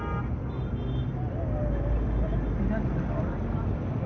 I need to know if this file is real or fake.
real